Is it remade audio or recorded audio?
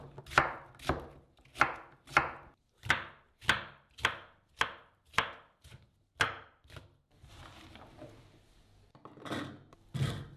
recorded